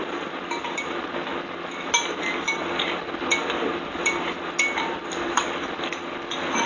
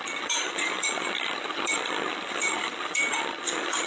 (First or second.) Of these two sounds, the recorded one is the first